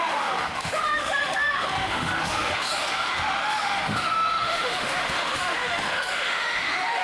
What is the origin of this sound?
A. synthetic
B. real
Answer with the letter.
A